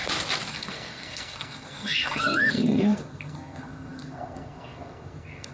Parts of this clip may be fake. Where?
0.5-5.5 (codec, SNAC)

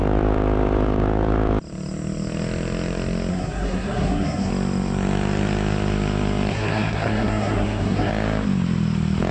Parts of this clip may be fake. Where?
3.3-4.5 (codec, SNAC); 6.5-8.1

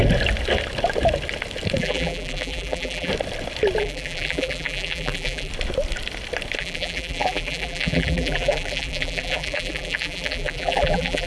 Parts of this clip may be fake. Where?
1.8-3.1 (vocoder, BigVGAN v2); 3.8-5.5; 6.6-11.3

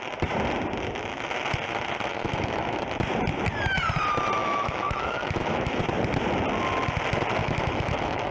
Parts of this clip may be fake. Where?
2.1-2.8 (autoencoder, DAC-VAE); 4.4-5.8; 7.4-8.3

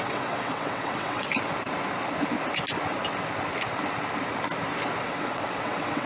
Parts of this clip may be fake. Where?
0.0-1.3 (vocoder, WaveNeXt); 5.0-6.1

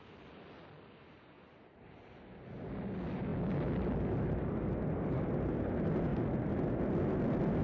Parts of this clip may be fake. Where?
none

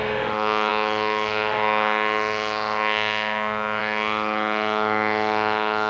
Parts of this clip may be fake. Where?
0.0-5.9 (autoencoder, DAC-VAE)

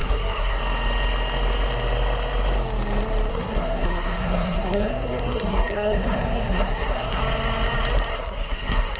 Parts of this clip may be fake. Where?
0.0-0.6 (codec, SNAC); 3.3-7.2; 8.1-9.0